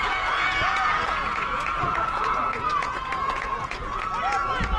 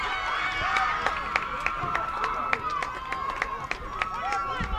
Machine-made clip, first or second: first